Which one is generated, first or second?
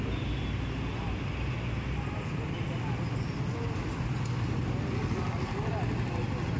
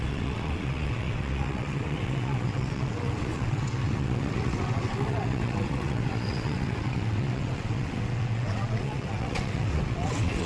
second